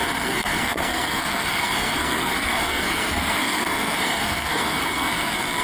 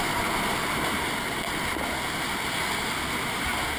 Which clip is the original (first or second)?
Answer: second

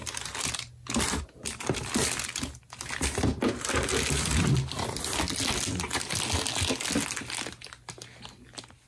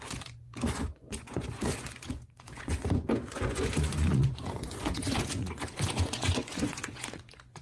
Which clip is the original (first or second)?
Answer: first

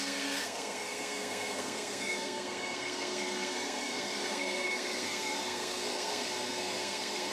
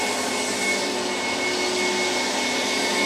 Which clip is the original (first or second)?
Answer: second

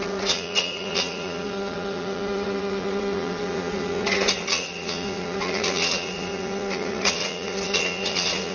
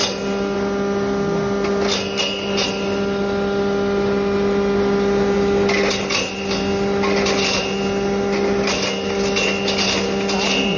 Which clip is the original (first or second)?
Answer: second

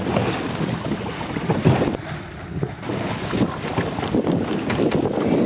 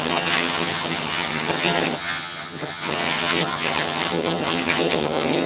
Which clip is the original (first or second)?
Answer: first